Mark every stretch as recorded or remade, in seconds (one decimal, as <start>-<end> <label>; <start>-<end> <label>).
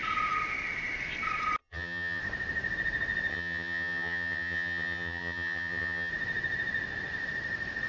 0.0-1.6 recorded; 1.6-2.2 remade; 2.2-3.3 recorded; 3.3-6.1 remade; 6.1-7.9 recorded